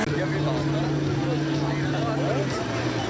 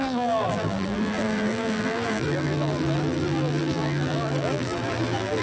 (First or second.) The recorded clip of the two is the first